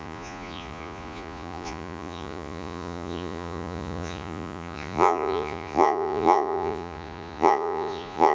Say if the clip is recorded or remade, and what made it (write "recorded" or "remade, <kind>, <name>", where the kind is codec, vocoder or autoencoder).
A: remade, vocoder, Vocos